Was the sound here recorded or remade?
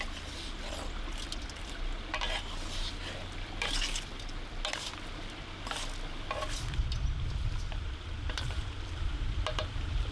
recorded